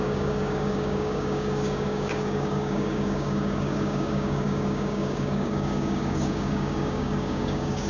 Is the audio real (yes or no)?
no